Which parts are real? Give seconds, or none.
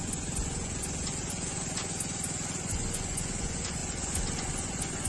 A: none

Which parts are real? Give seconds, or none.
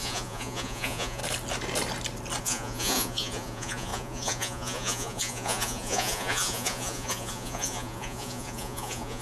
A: 1.2-2.4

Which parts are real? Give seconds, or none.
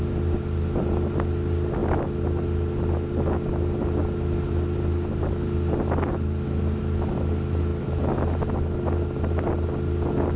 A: 0.0-10.4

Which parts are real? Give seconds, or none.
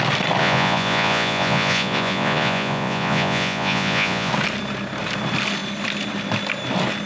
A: 0.0-0.4; 4.3-7.1